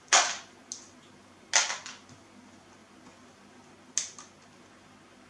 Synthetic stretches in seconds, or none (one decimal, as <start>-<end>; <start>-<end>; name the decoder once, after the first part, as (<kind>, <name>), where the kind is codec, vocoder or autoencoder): none